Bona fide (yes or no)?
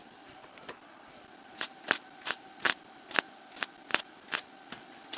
yes